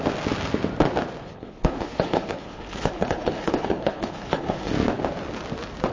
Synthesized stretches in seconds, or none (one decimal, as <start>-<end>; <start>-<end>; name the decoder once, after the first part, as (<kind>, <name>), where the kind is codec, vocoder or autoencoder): 1.2-4.7 (codec, HILCodec)